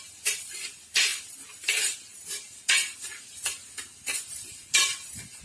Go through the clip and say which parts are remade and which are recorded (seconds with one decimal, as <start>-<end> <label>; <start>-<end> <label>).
0.0-1.1 remade; 1.1-4.3 recorded; 4.3-5.4 remade